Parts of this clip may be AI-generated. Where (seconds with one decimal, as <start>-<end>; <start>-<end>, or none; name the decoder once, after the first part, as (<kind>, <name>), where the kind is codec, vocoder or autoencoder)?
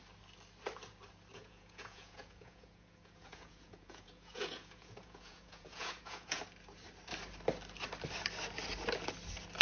1.3-6.4 (vocoder, Vocos)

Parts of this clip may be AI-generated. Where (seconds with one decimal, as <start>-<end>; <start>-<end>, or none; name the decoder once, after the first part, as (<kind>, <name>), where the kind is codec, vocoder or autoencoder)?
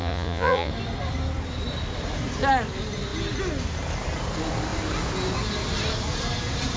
0.0-0.7 (vocoder, Vocos)